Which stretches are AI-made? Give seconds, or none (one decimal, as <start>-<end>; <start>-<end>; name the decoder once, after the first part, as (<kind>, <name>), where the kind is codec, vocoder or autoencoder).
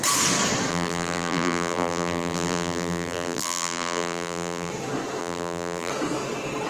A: 0.7-4.7 (vocoder, BigVGAN v2); 5.2-5.9